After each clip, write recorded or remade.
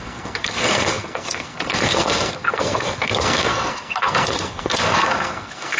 remade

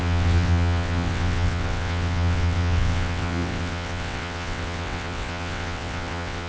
remade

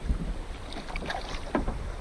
recorded